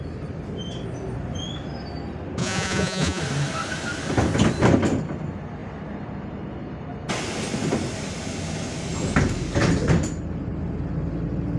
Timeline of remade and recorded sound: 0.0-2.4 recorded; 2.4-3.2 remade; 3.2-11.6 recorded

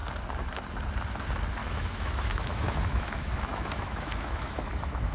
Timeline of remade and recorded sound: 0.0-1.6 recorded; 1.6-5.1 remade

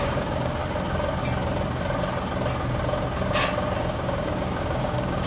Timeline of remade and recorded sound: 0.0-0.6 remade; 0.6-3.8 recorded; 3.8-5.3 remade

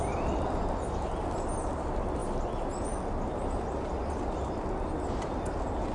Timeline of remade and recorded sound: 0.0-5.9 recorded

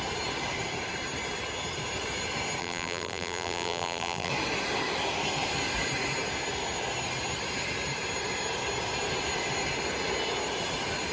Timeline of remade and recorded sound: 0.0-2.6 recorded; 2.6-4.3 remade; 4.3-11.1 recorded

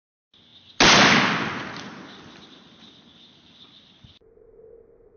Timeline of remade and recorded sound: 0.0-5.2 recorded

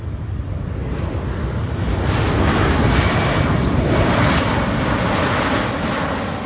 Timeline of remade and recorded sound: 0.0-6.5 recorded

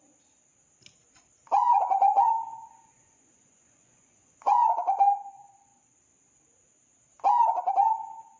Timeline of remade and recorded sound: 0.0-1.6 recorded; 1.6-5.0 remade; 5.0-8.4 recorded